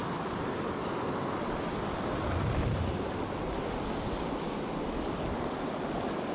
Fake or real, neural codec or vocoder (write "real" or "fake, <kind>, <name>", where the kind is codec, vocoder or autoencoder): real